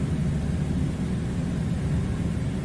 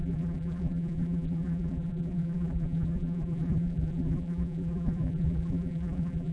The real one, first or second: first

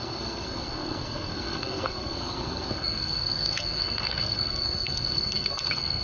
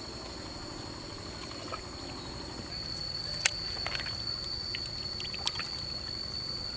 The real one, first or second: second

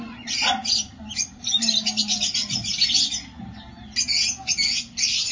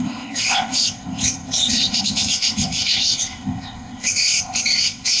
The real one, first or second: first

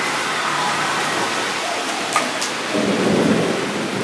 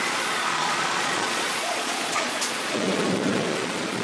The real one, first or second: first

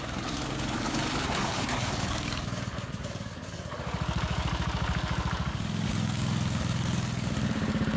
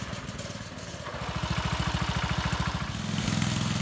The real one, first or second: second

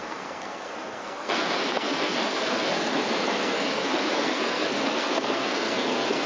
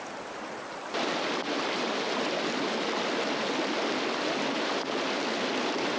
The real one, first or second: second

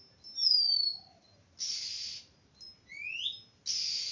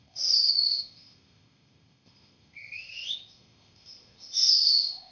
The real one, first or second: first